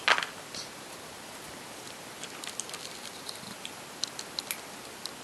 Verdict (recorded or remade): recorded